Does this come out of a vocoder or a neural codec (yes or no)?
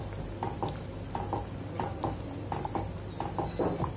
no